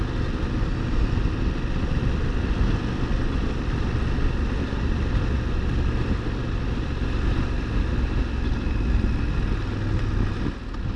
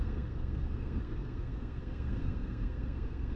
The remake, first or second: second